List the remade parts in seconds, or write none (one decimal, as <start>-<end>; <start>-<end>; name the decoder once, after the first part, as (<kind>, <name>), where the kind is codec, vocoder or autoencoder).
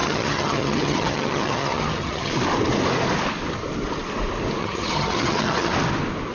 0.0-2.3 (vocoder, HiFi-GAN); 4.6-5.7